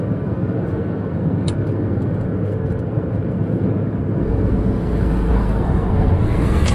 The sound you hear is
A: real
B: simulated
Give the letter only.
B